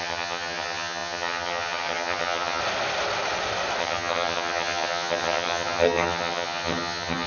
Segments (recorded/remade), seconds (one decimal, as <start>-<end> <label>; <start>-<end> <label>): 0.0-2.6 remade; 2.6-3.8 recorded; 3.8-7.3 remade